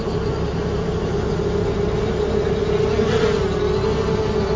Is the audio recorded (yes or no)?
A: yes